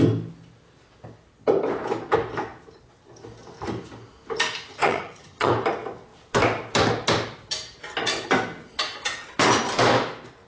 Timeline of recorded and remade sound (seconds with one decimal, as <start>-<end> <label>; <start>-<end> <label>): 0.0-4.7 recorded; 4.7-5.5 remade; 5.5-10.5 recorded